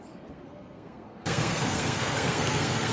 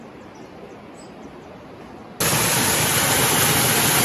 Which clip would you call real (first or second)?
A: second